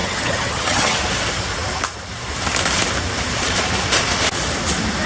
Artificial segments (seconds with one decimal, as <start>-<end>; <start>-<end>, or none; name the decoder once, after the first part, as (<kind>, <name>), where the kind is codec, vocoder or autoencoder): 0.0-1.0 (vocoder, HiFi-GAN)